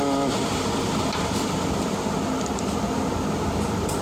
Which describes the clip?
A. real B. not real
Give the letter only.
A